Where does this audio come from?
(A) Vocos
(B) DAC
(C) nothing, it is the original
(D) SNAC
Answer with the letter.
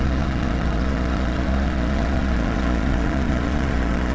A